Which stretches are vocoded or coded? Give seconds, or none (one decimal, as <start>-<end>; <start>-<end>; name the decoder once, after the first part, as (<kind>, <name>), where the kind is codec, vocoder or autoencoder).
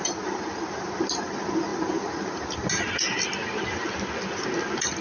none